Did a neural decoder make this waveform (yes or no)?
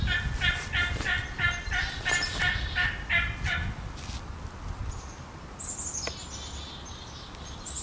no